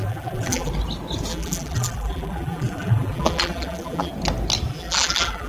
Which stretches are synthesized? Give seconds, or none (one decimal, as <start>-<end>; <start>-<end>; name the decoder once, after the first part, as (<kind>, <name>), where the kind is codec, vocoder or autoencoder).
0.0-0.7 (vocoder, BigVGAN v2); 1.3-4.1; 4.7-5.5